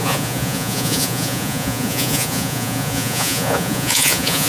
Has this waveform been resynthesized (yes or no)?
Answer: yes